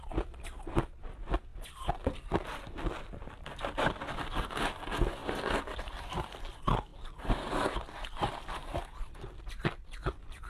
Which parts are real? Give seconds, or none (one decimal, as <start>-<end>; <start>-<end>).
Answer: 0.0-10.5